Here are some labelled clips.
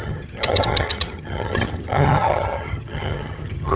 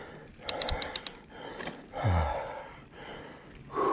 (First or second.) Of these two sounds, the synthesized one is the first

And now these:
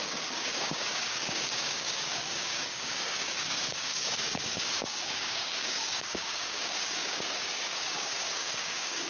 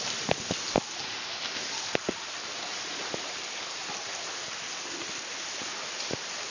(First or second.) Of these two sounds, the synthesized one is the first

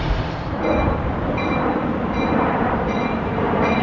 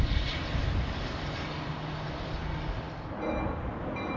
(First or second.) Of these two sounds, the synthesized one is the first